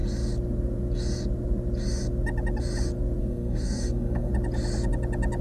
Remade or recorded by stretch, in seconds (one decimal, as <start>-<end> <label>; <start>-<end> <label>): 0.0-3.2 recorded; 3.2-4.3 remade; 4.3-5.4 recorded